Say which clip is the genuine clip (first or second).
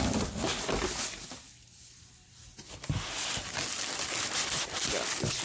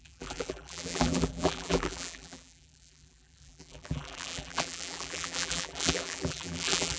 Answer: first